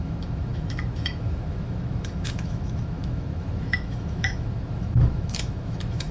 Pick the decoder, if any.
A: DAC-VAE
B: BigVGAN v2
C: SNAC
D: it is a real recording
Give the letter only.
A